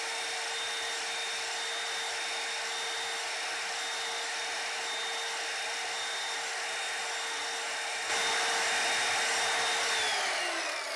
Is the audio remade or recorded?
recorded